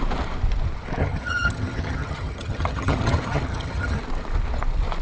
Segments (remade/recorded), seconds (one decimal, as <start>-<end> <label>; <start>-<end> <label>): 0.0-1.0 recorded; 1.0-4.0 remade; 4.0-5.0 recorded